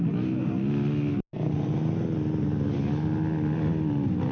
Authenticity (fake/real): real